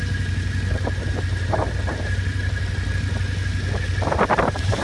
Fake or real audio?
real